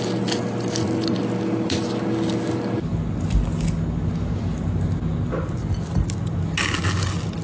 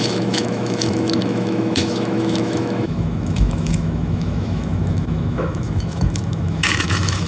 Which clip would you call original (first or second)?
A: first